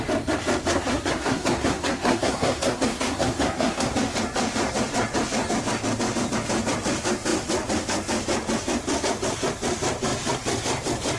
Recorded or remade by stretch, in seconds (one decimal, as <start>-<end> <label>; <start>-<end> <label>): 0.0-0.7 recorded; 0.7-3.9 remade; 3.9-11.2 recorded